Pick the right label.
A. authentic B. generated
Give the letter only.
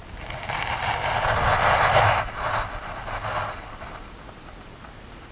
A